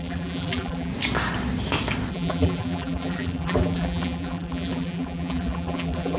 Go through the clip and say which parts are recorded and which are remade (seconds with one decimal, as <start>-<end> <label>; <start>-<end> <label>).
0.0-0.9 remade; 0.9-2.1 recorded; 2.1-6.2 remade